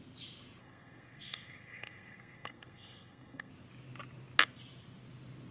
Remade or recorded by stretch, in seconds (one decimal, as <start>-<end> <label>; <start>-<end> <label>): 0.0-0.6 recorded; 0.6-3.5 remade; 3.5-5.5 recorded